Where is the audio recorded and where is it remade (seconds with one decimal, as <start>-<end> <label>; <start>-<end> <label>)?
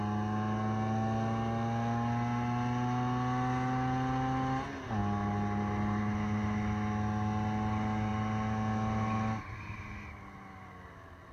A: 0.0-11.3 recorded